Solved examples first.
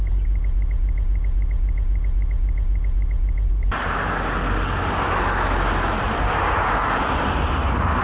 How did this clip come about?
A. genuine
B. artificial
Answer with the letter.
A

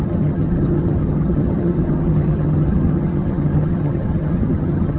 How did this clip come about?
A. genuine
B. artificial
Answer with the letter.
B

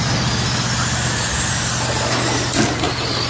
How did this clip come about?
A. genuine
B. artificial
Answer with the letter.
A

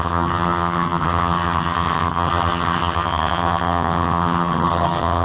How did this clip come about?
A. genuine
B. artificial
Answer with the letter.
B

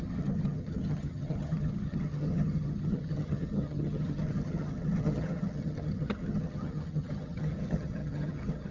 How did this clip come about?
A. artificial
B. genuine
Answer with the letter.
A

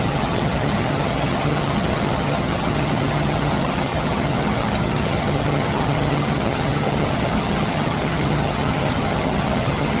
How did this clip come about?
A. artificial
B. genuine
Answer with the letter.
A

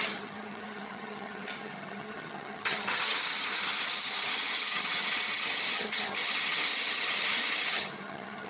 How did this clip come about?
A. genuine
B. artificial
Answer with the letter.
B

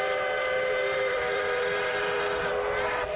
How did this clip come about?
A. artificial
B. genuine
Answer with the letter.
B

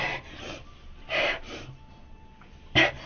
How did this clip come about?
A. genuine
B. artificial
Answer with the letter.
A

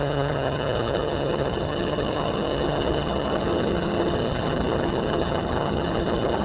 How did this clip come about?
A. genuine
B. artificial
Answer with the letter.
B